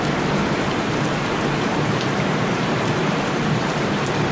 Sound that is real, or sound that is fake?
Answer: fake